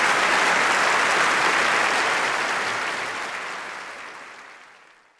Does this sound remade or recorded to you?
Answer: recorded